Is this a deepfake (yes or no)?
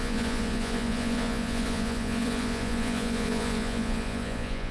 yes